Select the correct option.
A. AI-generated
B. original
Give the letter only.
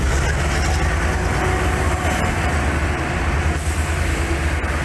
B